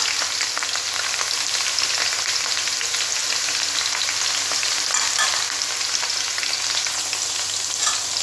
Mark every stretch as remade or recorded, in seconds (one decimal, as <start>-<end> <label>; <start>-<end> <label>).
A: 0.0-8.2 recorded